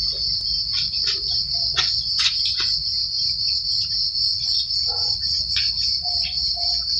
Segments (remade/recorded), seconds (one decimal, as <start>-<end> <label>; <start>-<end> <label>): 0.0-1.0 recorded; 1.0-2.3 remade; 2.3-4.3 recorded; 4.3-7.0 remade